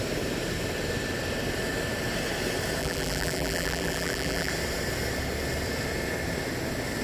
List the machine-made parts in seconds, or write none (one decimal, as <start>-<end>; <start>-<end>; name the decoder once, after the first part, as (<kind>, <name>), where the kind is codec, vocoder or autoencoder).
2.8-4.5 (vocoder, BigVGAN v2)